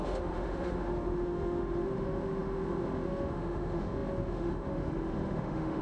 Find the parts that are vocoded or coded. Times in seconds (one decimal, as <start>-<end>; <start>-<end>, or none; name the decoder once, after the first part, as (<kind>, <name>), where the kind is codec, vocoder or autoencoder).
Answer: 0.0-5.8 (autoencoder, DAC-VAE)